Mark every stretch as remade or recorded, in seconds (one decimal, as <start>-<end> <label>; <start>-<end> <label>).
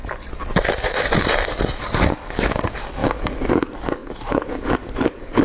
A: 0.0-1.8 recorded; 1.8-5.4 remade